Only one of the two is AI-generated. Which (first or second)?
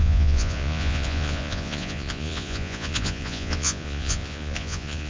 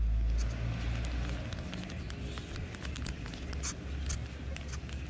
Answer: first